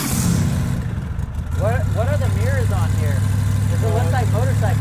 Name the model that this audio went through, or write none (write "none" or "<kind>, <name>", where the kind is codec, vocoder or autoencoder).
none